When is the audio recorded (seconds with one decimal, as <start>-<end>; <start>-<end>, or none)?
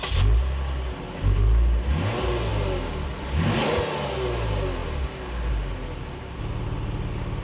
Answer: 0.0-7.4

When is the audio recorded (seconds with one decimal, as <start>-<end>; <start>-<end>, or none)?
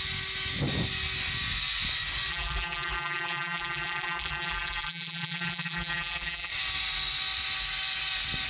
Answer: 0.0-2.3; 6.5-8.5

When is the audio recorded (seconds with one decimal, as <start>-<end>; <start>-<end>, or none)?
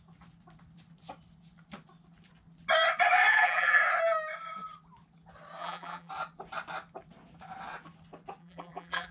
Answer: 0.0-3.3; 3.8-5.6; 6.1-8.4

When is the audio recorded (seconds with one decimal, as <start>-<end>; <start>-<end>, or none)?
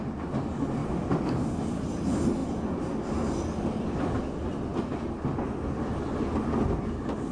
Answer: 0.0-7.3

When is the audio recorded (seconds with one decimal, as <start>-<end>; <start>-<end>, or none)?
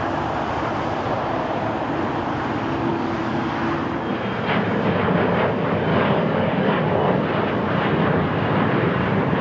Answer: 0.0-2.9; 3.6-5.9; 6.8-9.4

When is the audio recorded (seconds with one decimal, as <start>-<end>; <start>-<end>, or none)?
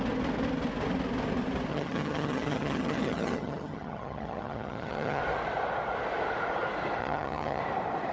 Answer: 0.0-1.7; 5.2-7.0; 7.6-8.1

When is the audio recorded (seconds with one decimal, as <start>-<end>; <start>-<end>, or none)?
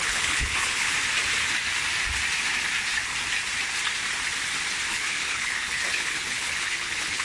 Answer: 0.9-4.9